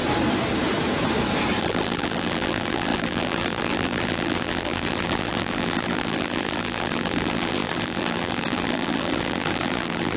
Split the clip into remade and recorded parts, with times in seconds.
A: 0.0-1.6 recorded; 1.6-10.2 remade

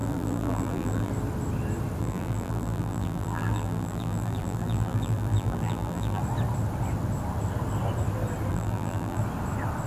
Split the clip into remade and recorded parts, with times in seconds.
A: 0.0-1.1 remade; 1.1-2.0 recorded; 2.0-6.2 remade; 6.2-8.5 recorded; 8.5-9.2 remade; 9.2-9.9 recorded

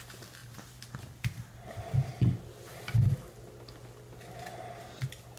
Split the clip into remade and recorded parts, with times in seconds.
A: 0.0-0.4 recorded; 0.4-1.6 remade; 1.6-5.4 recorded

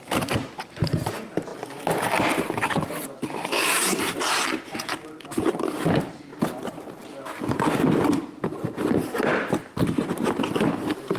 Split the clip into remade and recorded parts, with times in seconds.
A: 0.0-1.5 remade; 1.5-2.5 recorded; 2.5-6.3 remade; 6.3-7.4 recorded; 7.4-11.2 remade

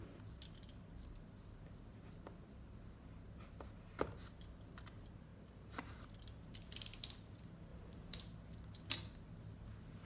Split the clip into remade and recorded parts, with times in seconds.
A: 0.0-5.3 recorded; 5.3-6.0 remade; 6.0-7.7 recorded; 7.7-8.2 remade; 8.2-10.1 recorded

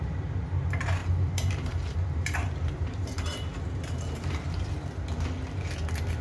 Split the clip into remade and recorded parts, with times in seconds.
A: 0.0-1.0 recorded; 1.0-4.7 remade; 4.7-6.2 recorded

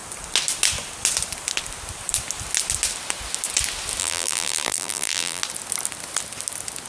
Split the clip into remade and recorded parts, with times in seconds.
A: 0.0-4.0 recorded; 4.0-5.4 remade; 5.4-6.9 recorded